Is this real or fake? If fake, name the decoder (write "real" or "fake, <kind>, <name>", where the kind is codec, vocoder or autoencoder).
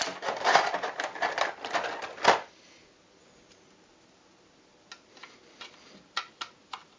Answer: real